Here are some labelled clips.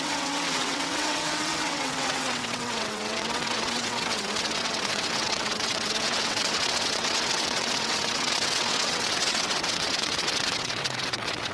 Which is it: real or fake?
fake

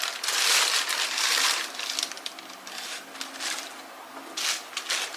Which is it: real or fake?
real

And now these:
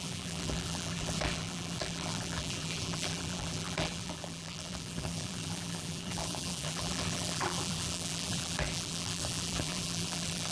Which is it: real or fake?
fake